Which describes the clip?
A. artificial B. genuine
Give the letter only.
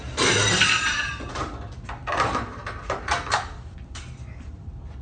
A